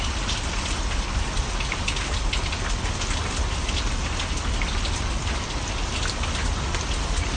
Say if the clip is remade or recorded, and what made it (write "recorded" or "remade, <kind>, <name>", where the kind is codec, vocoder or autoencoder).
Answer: recorded